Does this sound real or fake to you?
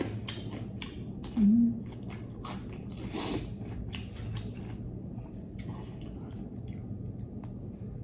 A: real